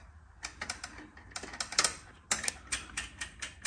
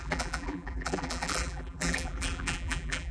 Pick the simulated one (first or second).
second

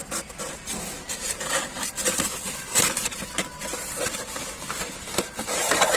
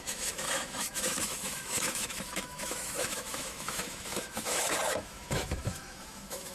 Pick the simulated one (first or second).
second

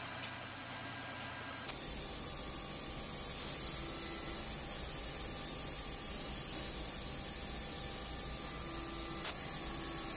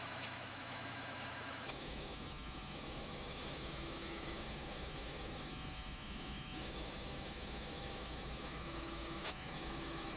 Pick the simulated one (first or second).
second